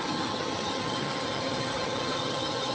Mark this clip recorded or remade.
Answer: remade